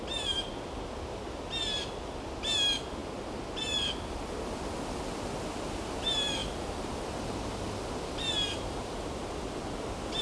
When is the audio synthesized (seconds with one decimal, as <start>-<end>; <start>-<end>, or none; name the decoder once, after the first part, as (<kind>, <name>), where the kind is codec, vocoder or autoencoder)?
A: none